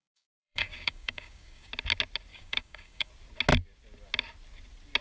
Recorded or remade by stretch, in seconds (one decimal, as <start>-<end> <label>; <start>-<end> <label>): 0.0-1.7 remade; 1.7-2.3 recorded; 2.3-3.1 remade; 3.1-5.0 recorded